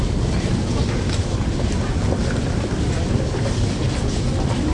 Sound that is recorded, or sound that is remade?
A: recorded